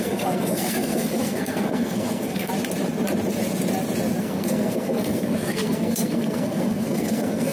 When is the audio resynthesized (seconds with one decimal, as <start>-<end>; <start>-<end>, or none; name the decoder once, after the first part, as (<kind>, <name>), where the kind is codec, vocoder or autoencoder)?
0.0-2.5 (codec, SNAC); 4.2-7.5